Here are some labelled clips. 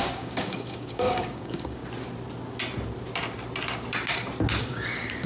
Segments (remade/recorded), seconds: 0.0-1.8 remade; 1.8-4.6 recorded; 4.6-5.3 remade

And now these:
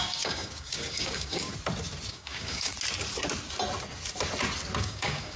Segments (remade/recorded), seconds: 0.0-1.5 remade; 1.5-2.1 recorded; 2.1-2.7 remade; 2.7-4.8 recorded; 4.8-5.4 remade

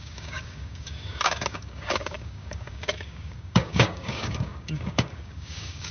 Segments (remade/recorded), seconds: 0.0-5.9 remade